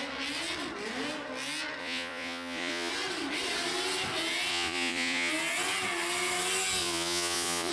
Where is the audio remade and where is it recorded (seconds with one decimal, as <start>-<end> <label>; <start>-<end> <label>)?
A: 0.0-1.8 recorded; 1.8-2.9 remade; 2.9-4.5 recorded; 4.5-5.3 remade; 5.3-6.8 recorded; 6.8-7.7 remade